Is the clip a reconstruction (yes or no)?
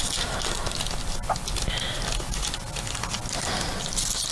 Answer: no